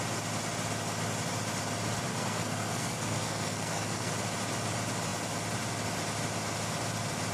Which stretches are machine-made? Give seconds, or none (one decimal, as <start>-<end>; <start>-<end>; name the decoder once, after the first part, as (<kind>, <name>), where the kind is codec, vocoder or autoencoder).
2.1-4.1 (codec, SNAC)